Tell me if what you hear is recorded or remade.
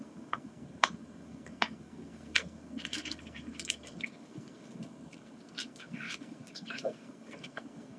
remade